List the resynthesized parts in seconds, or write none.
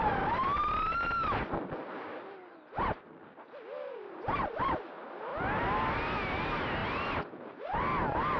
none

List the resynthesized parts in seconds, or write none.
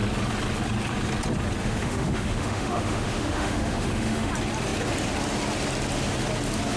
1.6-4.3 (autoencoder, DAC-VAE)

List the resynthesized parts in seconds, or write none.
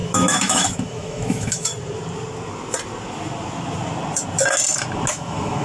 0.0-1.7 (autoencoder, DAC-VAE); 5.1-5.6